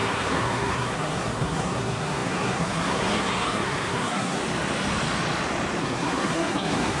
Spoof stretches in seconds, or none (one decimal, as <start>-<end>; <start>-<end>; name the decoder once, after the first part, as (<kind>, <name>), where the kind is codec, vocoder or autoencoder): 0.0-4.4 (codec, SNAC); 5.8-7.0